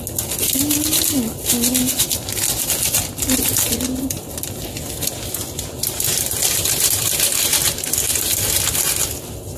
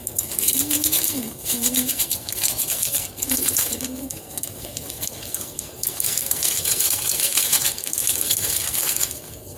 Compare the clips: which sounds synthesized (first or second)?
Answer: second